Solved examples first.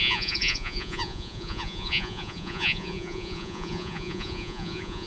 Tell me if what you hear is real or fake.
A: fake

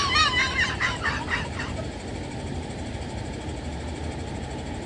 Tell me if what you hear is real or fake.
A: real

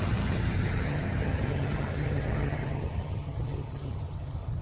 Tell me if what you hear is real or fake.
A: fake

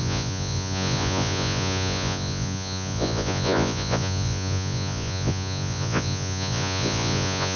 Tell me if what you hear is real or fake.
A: fake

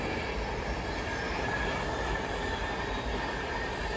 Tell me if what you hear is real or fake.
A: real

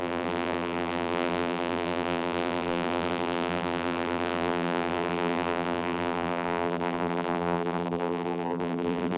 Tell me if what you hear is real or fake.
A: fake